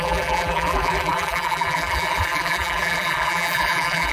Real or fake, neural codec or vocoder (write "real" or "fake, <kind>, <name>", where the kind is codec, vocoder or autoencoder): fake, vocoder, BigVGAN v2